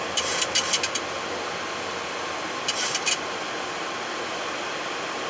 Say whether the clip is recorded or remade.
recorded